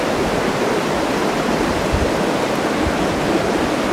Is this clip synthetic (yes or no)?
no